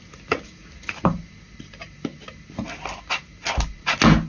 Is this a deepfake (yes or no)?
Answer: no